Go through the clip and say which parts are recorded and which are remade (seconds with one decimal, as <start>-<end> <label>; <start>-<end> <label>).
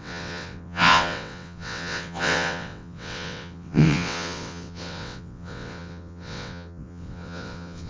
0.0-7.9 remade